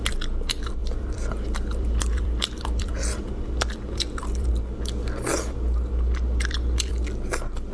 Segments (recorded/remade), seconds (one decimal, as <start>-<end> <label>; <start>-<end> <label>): 0.0-0.8 recorded; 0.8-4.5 remade; 4.5-7.7 recorded